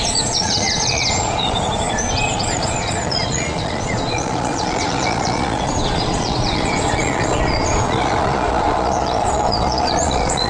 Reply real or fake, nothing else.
fake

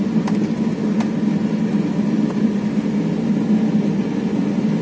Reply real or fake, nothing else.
real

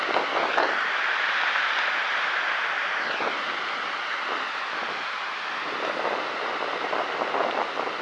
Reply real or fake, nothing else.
real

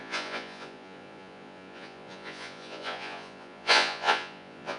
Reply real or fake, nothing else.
fake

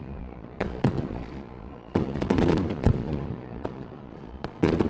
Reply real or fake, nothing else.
fake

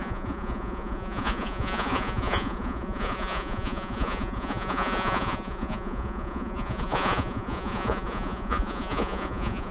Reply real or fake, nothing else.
fake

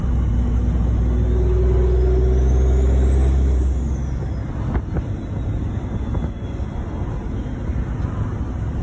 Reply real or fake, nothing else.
real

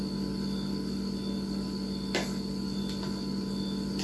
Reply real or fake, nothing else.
real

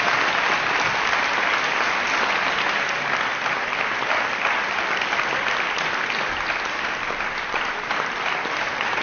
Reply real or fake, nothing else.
real